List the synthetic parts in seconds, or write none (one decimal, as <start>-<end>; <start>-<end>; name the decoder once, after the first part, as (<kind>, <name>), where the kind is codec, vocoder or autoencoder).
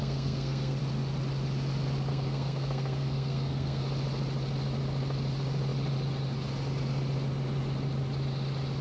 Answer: 0.0-0.8 (codec, SNAC); 2.1-3.8